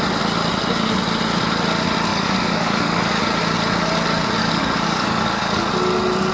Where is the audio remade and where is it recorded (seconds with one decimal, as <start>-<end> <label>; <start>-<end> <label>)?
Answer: 0.0-2.1 recorded; 2.1-3.2 remade; 3.2-4.4 recorded; 4.4-5.7 remade; 5.7-6.3 recorded